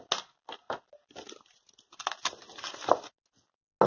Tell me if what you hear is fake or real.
real